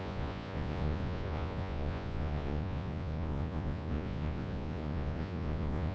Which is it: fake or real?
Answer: fake